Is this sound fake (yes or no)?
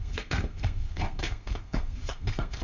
yes